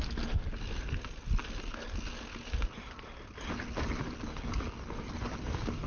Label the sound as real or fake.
real